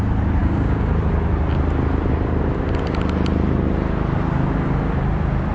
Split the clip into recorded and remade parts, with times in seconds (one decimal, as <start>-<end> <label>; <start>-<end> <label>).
0.0-0.4 recorded; 0.4-0.9 remade; 0.9-5.5 recorded